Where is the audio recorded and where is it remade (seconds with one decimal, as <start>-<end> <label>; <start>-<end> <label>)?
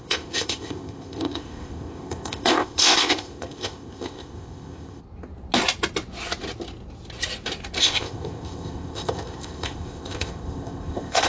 0.0-5.0 remade; 5.0-7.8 recorded; 7.8-11.3 remade